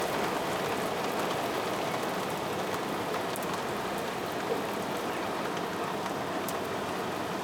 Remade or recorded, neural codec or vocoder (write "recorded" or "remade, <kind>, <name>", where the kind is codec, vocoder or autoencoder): recorded